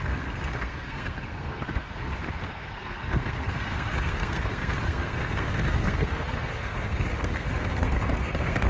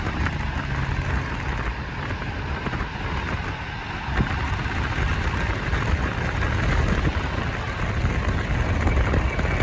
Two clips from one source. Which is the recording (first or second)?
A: second